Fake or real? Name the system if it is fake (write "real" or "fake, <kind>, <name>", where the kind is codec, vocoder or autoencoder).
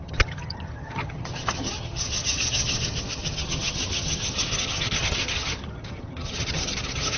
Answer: fake, vocoder, HiFi-GAN